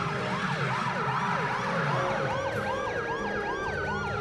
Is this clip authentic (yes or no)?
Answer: yes